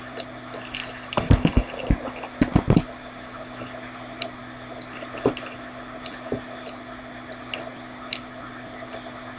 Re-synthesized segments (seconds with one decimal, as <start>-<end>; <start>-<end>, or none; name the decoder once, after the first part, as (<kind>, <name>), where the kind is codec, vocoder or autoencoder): none